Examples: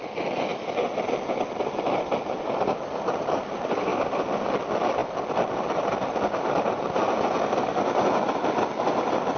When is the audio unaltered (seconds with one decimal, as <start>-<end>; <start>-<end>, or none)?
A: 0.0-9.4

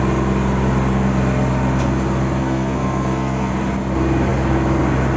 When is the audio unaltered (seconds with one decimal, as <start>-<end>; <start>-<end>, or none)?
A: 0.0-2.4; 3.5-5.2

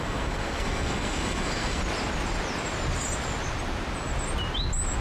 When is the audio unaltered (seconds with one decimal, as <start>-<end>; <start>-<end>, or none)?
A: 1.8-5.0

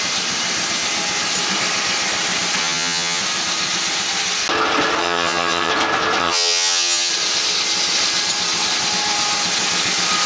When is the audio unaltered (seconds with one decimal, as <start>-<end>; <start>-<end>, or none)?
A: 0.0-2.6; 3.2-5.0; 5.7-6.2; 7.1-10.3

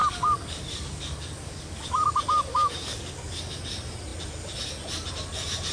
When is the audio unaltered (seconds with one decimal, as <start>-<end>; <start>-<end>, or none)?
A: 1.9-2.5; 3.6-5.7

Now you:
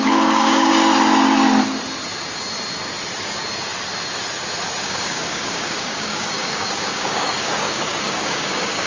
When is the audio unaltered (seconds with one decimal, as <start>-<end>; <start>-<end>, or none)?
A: 0.7-4.8